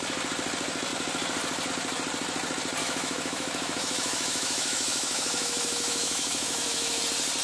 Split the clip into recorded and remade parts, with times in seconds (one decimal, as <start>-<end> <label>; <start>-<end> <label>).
0.0-2.8 recorded; 2.8-7.0 remade; 7.0-7.4 recorded